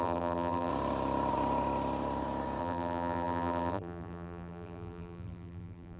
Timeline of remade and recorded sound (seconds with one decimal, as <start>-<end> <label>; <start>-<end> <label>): 0.0-0.7 remade; 0.7-2.6 recorded; 2.6-6.0 remade